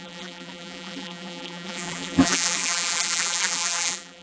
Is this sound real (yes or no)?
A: no